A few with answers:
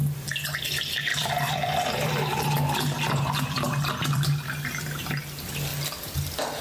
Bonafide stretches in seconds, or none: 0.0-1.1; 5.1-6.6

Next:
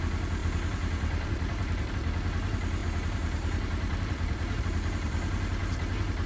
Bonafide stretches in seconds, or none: 0.0-0.4; 1.9-2.8; 4.6-6.3

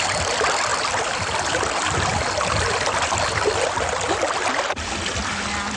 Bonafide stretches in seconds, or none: 0.0-5.8

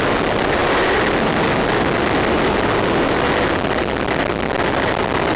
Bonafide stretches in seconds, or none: 0.0-5.4

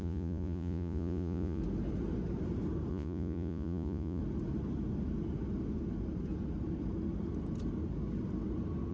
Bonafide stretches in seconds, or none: 1.6-2.9; 4.2-8.9

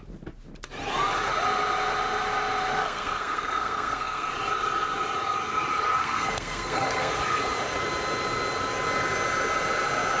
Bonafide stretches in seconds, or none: 0.0-2.7; 4.3-6.0; 7.1-10.2